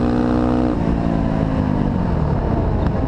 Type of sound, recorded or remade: recorded